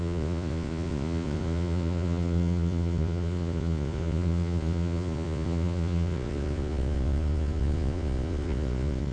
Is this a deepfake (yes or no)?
yes